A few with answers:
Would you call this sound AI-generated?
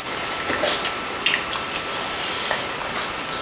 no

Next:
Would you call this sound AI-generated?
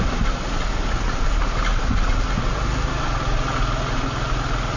no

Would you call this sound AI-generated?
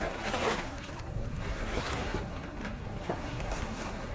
yes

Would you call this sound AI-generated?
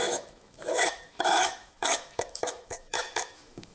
yes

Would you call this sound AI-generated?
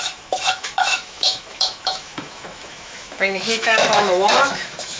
yes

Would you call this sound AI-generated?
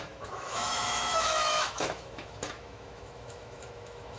yes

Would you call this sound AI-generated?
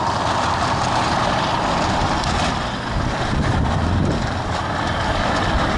no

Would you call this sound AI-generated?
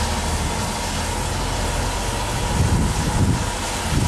no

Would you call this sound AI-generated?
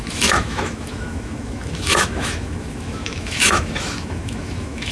yes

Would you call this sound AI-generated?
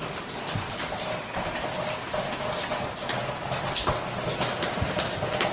no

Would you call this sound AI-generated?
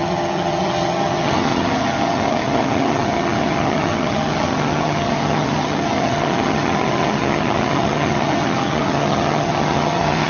yes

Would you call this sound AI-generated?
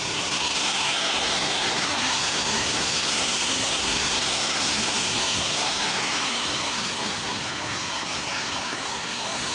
yes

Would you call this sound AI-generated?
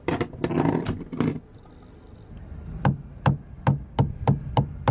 no